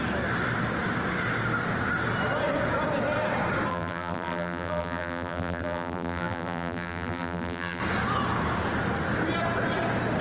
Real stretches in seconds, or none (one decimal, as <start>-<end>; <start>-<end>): 0.0-3.7; 7.8-10.2